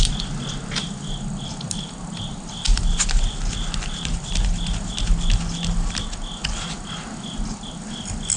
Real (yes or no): yes